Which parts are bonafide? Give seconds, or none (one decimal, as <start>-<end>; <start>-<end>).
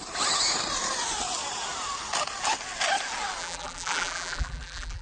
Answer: 0.0-3.4